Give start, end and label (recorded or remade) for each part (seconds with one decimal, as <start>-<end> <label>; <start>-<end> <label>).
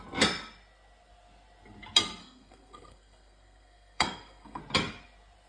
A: 0.0-2.2 recorded; 2.2-4.6 remade; 4.6-5.5 recorded